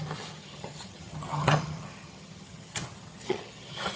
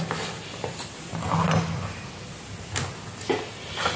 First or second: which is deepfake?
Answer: first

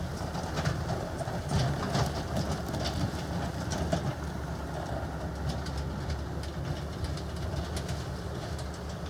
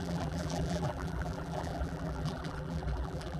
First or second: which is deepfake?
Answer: second